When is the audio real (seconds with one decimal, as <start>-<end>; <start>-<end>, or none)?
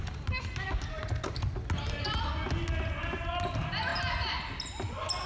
0.0-5.3